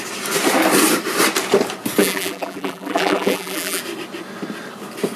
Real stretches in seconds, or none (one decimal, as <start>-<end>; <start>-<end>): 0.0-2.0; 3.8-5.2